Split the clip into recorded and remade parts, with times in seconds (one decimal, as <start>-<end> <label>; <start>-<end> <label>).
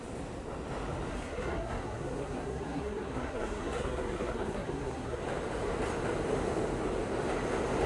0.0-1.1 recorded; 1.1-5.2 remade; 5.2-7.9 recorded